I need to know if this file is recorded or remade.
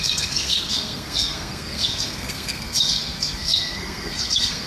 remade